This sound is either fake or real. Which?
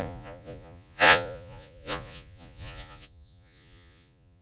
fake